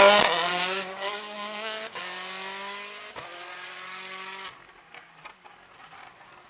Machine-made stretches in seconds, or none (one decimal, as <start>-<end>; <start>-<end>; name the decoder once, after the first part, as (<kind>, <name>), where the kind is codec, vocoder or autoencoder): 0.5-2.0 (codec, DAC)